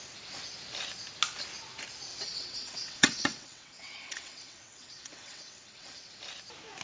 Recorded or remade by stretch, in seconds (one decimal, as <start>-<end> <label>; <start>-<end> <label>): 0.0-2.1 recorded; 2.1-6.2 remade; 6.2-6.8 recorded